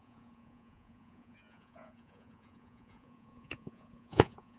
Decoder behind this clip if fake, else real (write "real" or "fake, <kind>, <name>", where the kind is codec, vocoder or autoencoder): fake, vocoder, Vocos